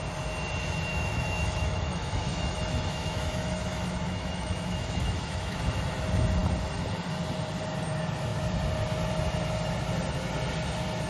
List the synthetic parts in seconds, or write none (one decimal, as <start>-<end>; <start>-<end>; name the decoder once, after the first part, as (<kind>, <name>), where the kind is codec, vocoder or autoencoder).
0.9-5.6 (autoencoder, DAC-VAE)